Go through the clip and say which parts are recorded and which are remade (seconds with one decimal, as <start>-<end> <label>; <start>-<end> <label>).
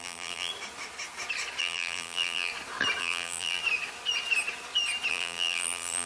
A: 0.0-0.5 remade; 0.5-1.6 recorded; 1.6-2.5 remade; 2.5-3.0 recorded; 3.0-3.6 remade; 3.6-5.1 recorded; 5.1-6.1 remade